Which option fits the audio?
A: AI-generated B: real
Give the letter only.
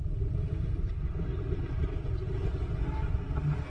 B